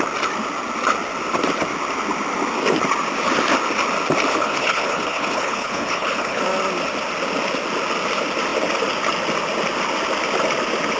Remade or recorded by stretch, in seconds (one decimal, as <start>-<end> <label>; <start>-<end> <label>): 0.0-4.3 recorded; 4.3-6.4 remade; 6.4-11.0 recorded